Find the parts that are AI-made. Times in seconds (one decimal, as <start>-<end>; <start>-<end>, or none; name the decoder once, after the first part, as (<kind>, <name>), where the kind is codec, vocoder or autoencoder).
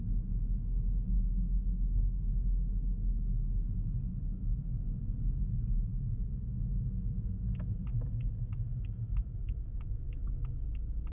4.3-5.1 (autoencoder, DAC-VAE); 5.9-6.9; 7.9-10.7